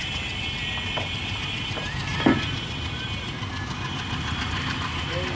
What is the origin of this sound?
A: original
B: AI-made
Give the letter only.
A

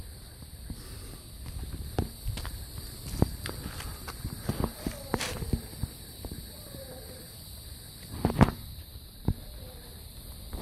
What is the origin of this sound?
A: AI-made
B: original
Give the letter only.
A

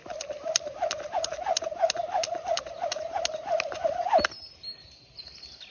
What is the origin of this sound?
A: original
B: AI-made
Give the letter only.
A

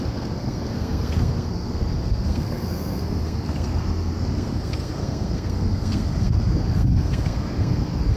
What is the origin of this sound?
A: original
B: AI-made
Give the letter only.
B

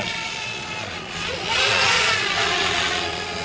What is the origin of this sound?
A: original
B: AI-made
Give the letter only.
B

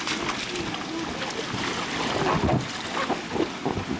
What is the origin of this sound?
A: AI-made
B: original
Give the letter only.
B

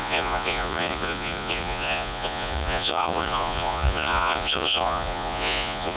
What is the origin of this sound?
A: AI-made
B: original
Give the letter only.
A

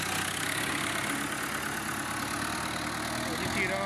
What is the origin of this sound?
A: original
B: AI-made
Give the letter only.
A